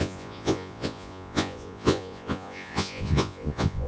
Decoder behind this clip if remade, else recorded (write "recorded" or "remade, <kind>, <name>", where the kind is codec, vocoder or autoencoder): remade, vocoder, Vocos